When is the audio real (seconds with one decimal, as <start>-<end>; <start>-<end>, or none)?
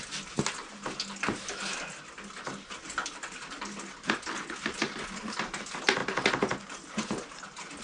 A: 0.0-7.8